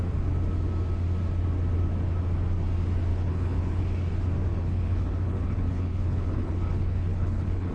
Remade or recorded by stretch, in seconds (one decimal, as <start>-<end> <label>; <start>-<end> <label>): 0.0-3.1 recorded; 3.1-3.8 remade; 3.8-4.5 recorded; 4.5-7.7 remade